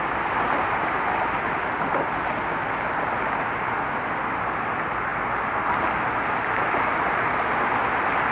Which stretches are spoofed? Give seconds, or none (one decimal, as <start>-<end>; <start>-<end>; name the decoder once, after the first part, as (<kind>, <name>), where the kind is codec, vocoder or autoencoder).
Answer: none